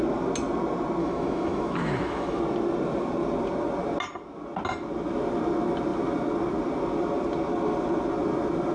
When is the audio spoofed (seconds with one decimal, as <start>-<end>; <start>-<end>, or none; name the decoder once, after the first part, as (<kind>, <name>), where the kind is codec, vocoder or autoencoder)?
1.0-2.4 (autoencoder, DAC-VAE)